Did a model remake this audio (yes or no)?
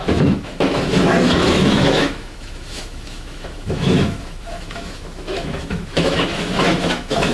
yes